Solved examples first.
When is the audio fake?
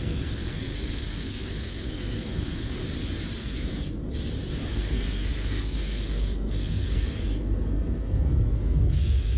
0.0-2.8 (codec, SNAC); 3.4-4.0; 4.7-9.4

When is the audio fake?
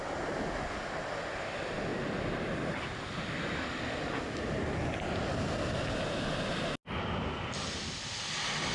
none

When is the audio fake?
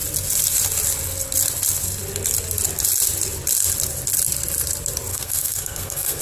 5.1-6.2 (codec, SNAC)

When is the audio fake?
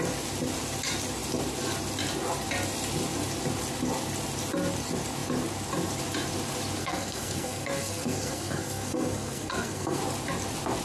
6.8-10.0 (codec, SNAC)